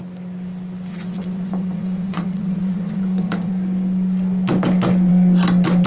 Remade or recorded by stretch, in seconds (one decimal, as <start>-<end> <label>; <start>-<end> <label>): 0.0-0.9 recorded; 0.9-3.5 remade; 3.5-5.9 recorded